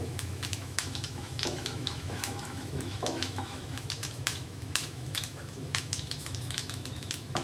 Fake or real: fake